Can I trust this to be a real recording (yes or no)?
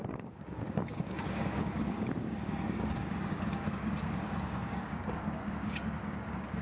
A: no